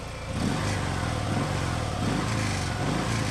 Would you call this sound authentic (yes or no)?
yes